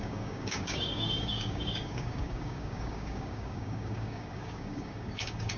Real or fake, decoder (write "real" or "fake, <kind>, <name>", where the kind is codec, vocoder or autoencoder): fake, codec, DAC